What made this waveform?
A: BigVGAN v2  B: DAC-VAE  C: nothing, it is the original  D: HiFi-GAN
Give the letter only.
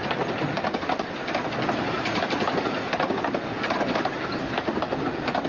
C